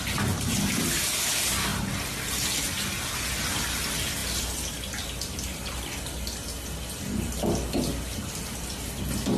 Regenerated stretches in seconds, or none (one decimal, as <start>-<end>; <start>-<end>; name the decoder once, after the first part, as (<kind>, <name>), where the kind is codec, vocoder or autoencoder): none